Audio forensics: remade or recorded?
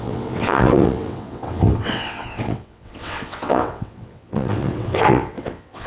remade